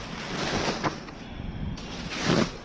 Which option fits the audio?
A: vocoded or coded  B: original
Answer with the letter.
B